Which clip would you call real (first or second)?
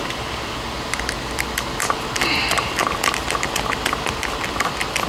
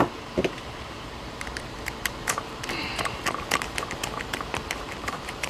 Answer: first